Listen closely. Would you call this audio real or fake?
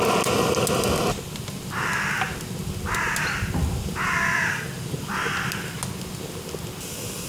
real